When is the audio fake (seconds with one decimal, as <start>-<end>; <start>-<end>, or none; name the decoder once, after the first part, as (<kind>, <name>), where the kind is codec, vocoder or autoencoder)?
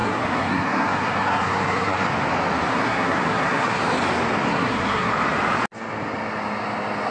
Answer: 0.0-2.1 (codec, SNAC); 2.7-3.8; 4.5-5.1